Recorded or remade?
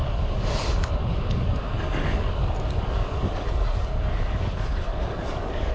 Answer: remade